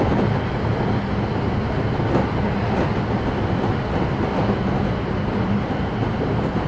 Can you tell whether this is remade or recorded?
recorded